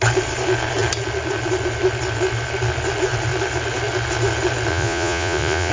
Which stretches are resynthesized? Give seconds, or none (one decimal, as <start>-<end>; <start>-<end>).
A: 4.7-5.7